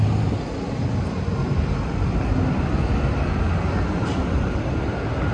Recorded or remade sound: recorded